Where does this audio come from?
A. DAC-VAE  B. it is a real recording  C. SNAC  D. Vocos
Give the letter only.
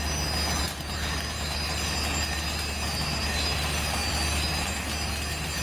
B